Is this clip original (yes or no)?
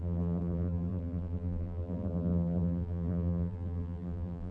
no